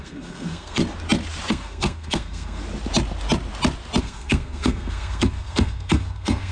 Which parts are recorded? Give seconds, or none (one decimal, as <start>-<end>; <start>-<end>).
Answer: 0.8-1.5; 2.6-4.0